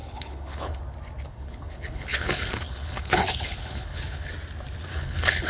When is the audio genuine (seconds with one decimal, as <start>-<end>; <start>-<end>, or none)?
0.8-1.3; 4.3-4.9